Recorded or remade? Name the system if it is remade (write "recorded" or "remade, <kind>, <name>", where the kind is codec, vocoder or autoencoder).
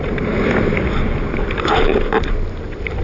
recorded